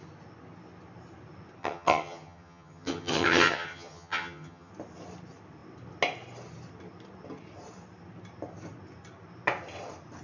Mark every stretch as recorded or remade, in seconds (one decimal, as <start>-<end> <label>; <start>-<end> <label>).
0.0-1.6 recorded; 1.6-4.7 remade; 4.7-10.2 recorded